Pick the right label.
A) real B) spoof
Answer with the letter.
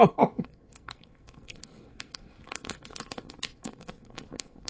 B